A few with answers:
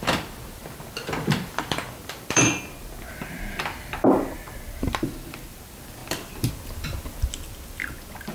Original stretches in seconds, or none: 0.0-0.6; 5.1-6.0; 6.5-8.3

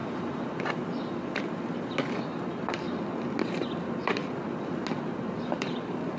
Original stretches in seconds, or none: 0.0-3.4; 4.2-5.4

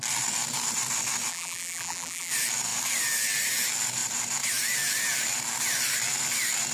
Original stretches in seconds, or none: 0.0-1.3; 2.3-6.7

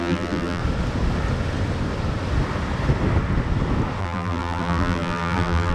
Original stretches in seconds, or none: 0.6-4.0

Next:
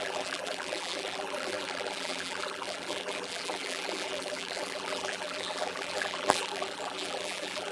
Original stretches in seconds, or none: none